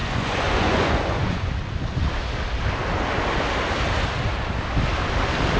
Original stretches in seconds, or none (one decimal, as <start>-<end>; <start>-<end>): 1.5-5.6